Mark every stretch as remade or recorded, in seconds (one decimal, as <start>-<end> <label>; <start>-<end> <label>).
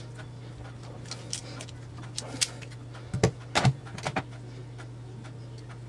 0.0-5.9 recorded